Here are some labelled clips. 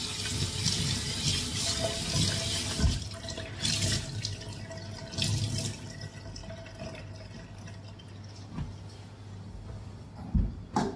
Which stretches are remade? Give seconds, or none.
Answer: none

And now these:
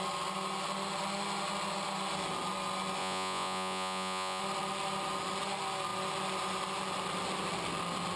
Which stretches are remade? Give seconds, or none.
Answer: 3.0-4.4 (vocoder, Vocos)

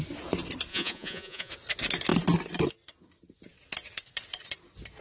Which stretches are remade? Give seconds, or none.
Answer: 0.7-1.5 (vocoder, Vocos)

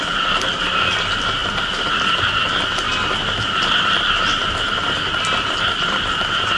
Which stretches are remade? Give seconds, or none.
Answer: none

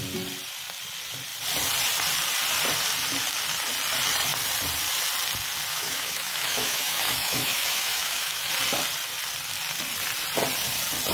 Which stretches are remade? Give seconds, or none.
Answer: 5.7-8.5 (autoencoder, DAC-VAE)

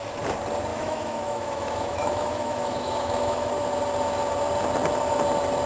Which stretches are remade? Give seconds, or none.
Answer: 0.7-3.5 (autoencoder, DAC-VAE)

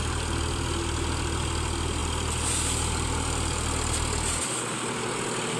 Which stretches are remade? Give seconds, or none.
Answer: none